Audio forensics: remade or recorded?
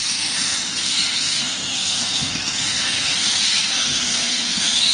remade